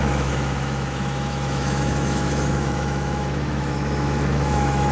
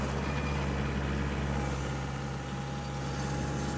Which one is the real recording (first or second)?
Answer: second